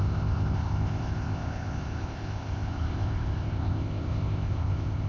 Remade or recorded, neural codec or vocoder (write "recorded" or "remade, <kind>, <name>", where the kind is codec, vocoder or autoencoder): remade, codec, ZipCodec